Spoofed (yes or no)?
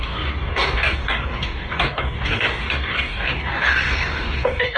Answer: yes